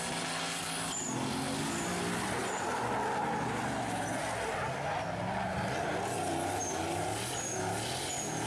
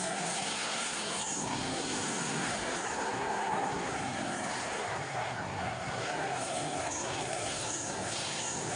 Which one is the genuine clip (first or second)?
first